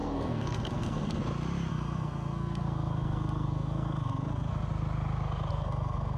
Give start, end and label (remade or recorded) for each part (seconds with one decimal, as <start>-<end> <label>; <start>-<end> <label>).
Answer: 0.0-1.2 remade; 1.2-1.7 recorded; 1.7-4.5 remade; 4.5-5.5 recorded; 5.5-6.2 remade